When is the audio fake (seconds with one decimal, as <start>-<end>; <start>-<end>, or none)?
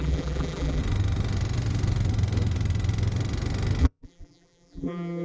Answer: 0.0-0.8; 3.8-5.2